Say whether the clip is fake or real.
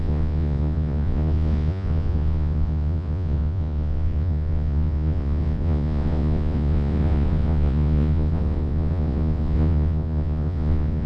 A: fake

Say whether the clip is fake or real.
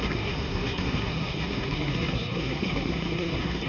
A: fake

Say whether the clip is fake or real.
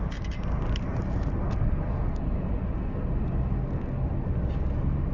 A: real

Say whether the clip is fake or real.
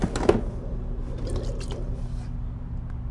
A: real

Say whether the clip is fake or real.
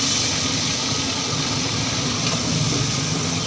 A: real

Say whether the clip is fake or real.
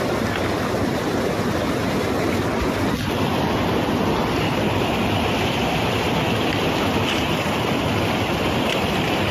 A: real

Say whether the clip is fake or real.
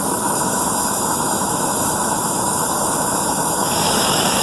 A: fake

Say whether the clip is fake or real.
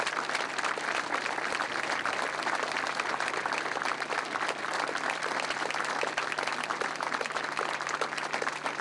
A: real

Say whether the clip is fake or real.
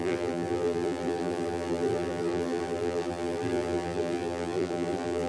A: fake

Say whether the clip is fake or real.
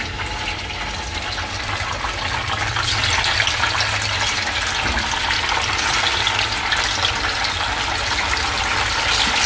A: real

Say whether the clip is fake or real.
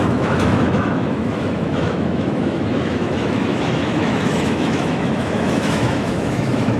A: fake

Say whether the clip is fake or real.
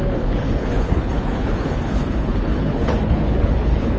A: fake